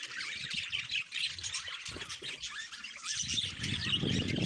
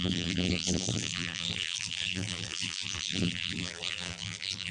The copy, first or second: second